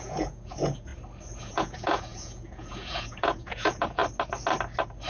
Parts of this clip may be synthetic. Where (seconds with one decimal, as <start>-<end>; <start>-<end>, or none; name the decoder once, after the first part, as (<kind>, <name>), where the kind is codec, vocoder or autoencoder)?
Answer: 0.0-0.9 (vocoder, Vocos); 1.4-4.0